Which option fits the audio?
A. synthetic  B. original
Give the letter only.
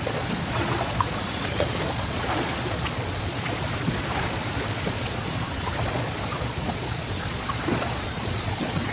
A